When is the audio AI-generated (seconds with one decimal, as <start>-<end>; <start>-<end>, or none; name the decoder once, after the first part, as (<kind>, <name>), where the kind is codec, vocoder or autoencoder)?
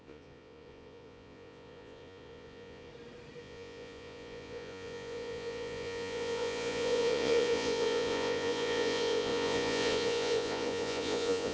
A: 0.0-2.9 (vocoder, Vocos); 3.4-11.5